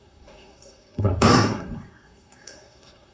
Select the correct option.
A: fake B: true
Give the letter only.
A